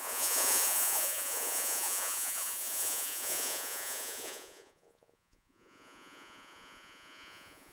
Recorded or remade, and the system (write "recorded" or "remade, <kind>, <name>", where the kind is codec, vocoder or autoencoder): remade, vocoder, Vocos